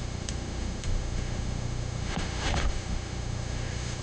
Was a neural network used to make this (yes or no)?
yes